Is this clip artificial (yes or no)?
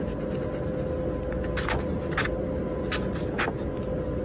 no